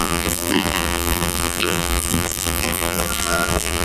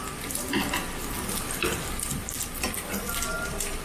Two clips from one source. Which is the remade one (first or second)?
first